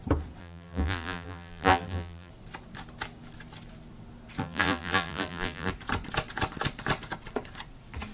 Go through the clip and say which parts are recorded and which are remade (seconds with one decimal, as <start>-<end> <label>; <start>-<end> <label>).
0.0-0.4 recorded; 0.4-2.3 remade; 2.3-4.4 recorded; 4.4-5.7 remade; 5.7-8.1 recorded